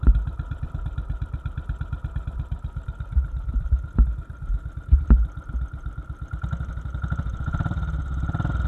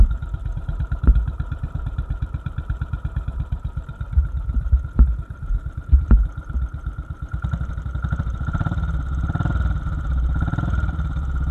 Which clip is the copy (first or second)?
second